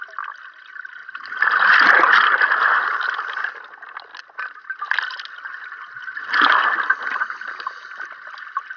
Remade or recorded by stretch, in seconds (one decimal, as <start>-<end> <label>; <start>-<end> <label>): 0.0-8.8 recorded